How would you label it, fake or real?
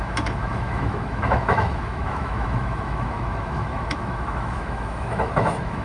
fake